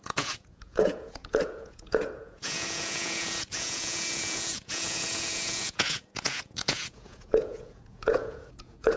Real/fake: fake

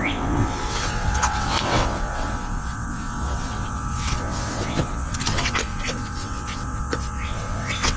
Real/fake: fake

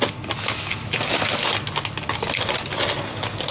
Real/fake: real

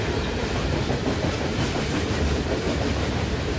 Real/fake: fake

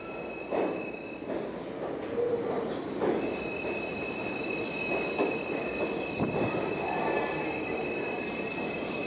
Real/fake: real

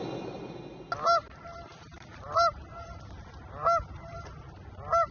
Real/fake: real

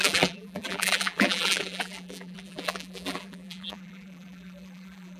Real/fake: fake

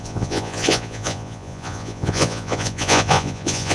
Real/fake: fake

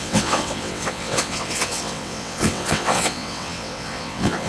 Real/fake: fake